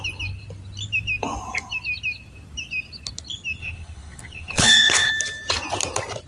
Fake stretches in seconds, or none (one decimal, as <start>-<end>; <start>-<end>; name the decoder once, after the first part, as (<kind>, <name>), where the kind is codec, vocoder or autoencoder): 3.6-5.1 (codec, HILCodec)